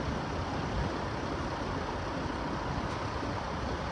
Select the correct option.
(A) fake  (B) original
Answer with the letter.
B